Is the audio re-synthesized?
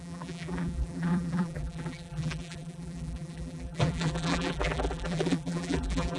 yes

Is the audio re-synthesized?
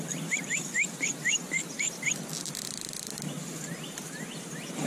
no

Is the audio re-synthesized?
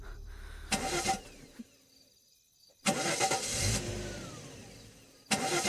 no